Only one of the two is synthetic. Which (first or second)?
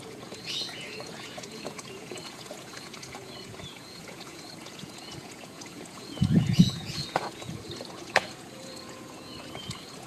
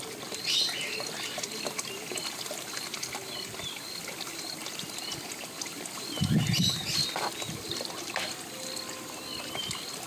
first